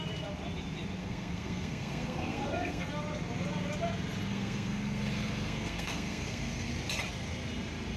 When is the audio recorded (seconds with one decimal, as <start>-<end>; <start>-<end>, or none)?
0.0-1.0; 2.9-4.3; 6.7-8.0